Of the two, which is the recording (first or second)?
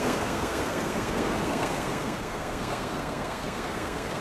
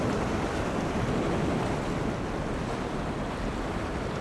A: second